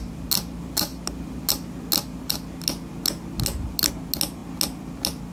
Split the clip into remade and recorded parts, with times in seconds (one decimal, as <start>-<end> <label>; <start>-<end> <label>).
0.0-5.3 recorded